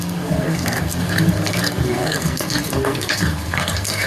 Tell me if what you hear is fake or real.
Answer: fake